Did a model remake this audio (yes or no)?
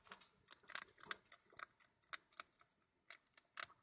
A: no